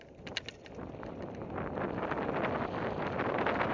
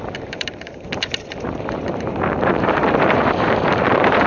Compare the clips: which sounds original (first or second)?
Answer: first